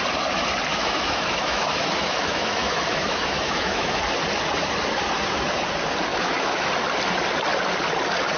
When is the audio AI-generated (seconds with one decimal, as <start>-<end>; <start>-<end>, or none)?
0.7-4.0; 6.1-6.7

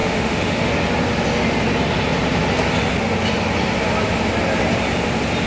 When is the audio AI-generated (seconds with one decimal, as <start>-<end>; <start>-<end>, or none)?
0.0-0.7

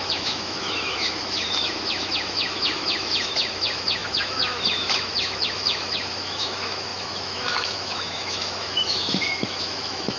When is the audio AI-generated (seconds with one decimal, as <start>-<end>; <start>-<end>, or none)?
0.0-10.2

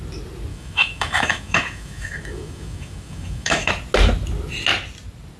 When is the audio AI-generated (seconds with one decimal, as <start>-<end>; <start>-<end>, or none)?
0.5-3.7

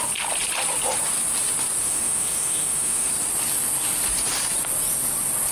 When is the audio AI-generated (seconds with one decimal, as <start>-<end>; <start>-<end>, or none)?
1.8-3.1

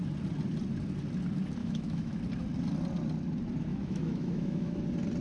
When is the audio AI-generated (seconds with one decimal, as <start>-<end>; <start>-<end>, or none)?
1.6-2.2; 3.7-4.8

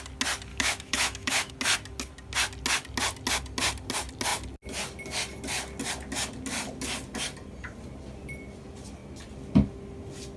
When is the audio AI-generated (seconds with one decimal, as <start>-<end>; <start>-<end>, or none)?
0.5-1.5